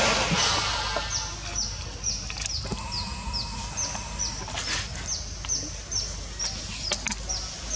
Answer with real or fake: real